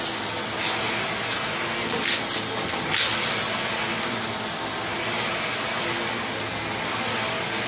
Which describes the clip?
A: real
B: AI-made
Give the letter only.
A